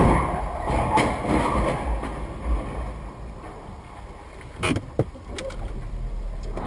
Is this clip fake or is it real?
real